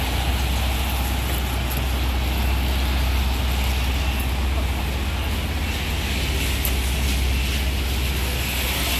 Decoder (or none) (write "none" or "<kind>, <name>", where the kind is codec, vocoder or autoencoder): none